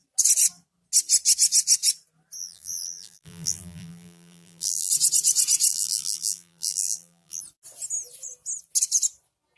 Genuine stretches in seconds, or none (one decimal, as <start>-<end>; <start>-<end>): 0.0-2.4; 4.9-5.7; 7.4-9.6